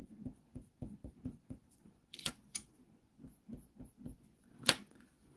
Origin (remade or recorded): remade